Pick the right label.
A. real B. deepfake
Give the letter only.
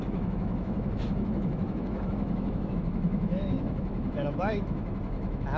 B